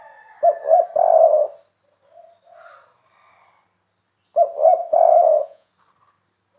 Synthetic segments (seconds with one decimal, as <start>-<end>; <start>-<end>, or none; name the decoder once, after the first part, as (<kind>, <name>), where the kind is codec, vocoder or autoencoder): 4.8-5.7 (vocoder, Vocos)